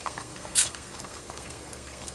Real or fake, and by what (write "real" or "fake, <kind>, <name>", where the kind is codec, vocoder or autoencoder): fake, codec, SNAC